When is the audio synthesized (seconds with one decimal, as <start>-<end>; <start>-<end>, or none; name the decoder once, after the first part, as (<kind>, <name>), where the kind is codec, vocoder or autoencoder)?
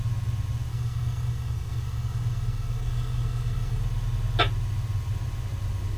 0.7-3.8 (codec, SNAC)